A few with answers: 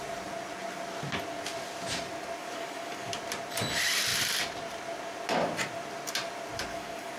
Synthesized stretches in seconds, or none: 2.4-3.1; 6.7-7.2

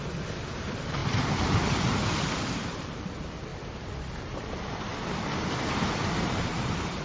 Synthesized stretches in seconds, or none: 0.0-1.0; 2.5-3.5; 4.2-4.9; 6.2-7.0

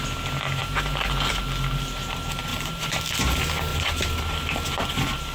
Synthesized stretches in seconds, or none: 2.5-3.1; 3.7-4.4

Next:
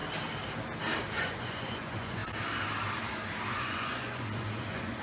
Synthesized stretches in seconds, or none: 1.2-2.2; 3.5-5.0

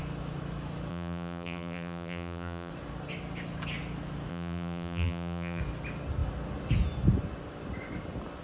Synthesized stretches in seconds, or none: 0.9-2.7; 4.3-5.6

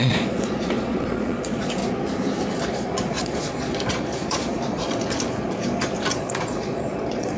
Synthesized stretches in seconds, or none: 0.0-1.8; 2.5-4.8; 6.1-7.4